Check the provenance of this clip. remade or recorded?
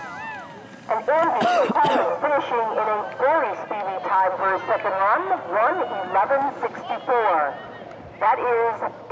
recorded